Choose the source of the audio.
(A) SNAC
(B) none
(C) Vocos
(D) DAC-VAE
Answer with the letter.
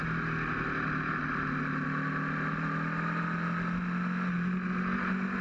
B